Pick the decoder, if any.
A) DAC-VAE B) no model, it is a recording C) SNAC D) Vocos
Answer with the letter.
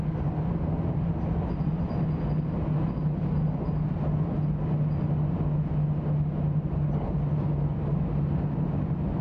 B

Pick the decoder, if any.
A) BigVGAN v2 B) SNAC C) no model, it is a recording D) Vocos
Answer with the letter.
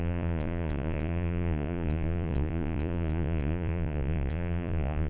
D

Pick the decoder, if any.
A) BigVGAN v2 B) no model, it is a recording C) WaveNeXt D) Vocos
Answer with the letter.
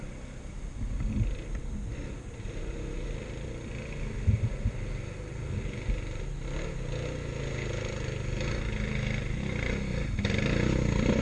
B